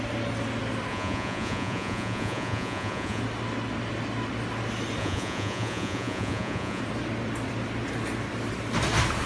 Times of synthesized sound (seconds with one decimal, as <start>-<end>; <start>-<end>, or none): 0.9-3.2; 5.0-6.8